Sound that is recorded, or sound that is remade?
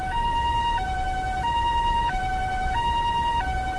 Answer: recorded